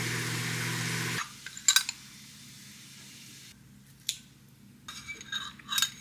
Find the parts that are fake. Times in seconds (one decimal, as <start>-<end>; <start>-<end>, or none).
none